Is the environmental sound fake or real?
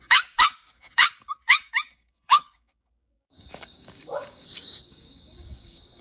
fake